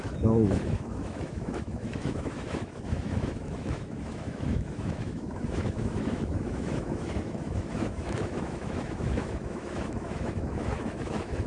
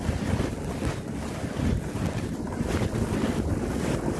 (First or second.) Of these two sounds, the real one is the second